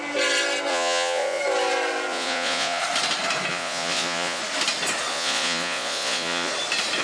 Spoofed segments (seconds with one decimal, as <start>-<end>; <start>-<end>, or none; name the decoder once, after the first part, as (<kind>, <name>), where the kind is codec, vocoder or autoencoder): 0.7-1.4 (vocoder, Vocos); 2.1-2.8; 3.5-4.4; 5.1-6.5